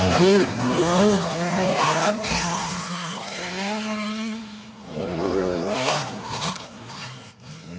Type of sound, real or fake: fake